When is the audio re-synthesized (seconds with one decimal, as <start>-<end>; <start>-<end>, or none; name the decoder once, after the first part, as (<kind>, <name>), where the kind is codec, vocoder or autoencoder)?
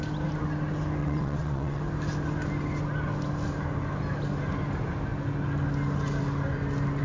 1.0-1.8 (vocoder, WaveNeXt)